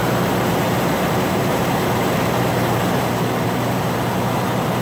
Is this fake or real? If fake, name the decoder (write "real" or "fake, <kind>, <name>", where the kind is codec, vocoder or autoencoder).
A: fake, vocoder, BigVGAN v2